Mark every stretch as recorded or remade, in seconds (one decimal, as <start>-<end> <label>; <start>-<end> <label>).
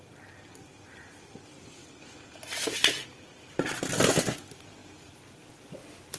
0.0-6.2 recorded